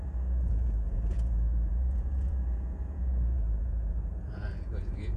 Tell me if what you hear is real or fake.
fake